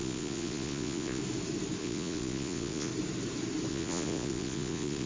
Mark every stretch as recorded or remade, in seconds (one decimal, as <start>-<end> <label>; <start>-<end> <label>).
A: 0.0-1.2 remade; 1.2-1.8 recorded; 1.8-2.9 remade; 2.9-3.7 recorded; 3.7-5.1 remade